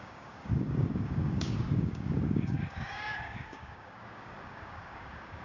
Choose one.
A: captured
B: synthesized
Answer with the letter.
B